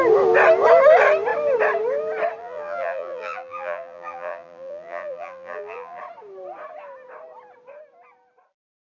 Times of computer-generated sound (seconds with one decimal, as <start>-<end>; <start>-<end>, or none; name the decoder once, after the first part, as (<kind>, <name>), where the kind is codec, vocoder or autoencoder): 2.4-6.0 (vocoder, BigVGAN v2)

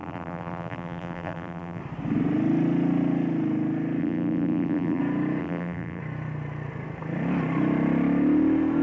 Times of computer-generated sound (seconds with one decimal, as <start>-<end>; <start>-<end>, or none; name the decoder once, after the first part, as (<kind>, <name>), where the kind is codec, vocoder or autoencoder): 0.0-1.8 (vocoder, BigVGAN v2); 4.0-5.0; 5.4-6.0